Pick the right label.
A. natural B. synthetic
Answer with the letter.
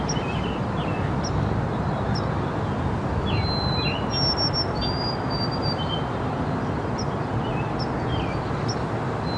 A